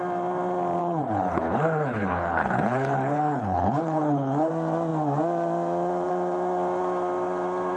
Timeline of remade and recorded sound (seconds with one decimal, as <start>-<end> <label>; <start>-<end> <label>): 0.0-0.8 recorded; 0.8-4.5 remade; 4.5-7.8 recorded